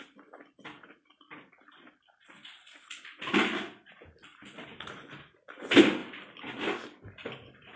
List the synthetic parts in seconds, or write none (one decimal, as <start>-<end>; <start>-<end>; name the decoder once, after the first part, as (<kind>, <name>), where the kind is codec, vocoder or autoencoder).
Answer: none